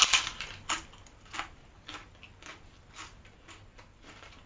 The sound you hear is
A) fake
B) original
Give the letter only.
B